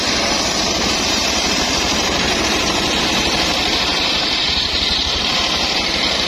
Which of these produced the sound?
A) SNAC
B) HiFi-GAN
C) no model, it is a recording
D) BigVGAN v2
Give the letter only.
D